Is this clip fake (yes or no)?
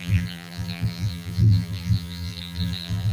yes